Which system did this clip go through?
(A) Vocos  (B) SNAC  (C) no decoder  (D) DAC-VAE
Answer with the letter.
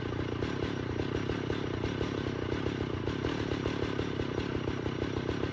C